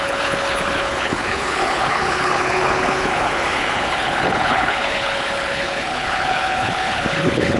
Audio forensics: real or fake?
fake